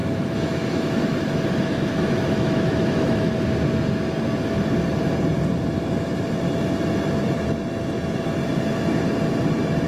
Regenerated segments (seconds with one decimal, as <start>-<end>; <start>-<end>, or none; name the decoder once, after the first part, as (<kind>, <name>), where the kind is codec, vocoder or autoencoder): 0.0-3.3 (autoencoder, DAC-VAE)

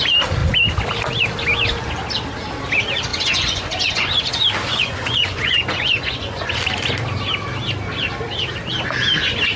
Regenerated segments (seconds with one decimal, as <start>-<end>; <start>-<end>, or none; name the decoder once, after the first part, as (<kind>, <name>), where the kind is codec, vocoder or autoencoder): 3.1-4.3 (vocoder, Vocos); 4.7-6.6

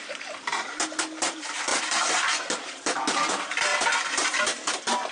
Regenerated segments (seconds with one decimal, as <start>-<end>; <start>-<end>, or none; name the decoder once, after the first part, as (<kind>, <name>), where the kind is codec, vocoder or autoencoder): 0.0-3.7 (vocoder, BigVGAN v2); 4.4-5.1